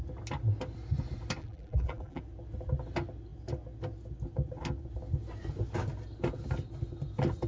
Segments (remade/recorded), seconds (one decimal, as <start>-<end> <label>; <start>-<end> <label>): 0.0-1.4 recorded; 1.4-2.2 remade; 2.2-7.5 recorded